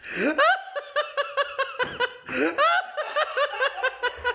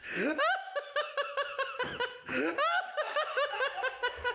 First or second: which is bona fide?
first